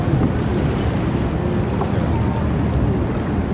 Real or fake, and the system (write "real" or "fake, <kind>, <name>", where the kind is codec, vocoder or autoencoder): real